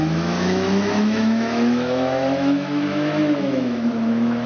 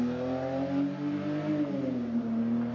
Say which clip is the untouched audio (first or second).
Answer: second